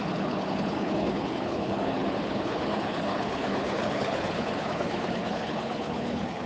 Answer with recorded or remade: remade